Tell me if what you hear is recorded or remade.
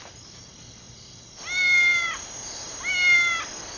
recorded